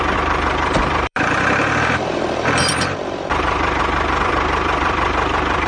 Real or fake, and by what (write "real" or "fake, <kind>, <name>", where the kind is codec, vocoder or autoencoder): fake, vocoder, BigVGAN v2